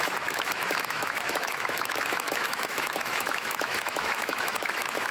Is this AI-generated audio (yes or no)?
yes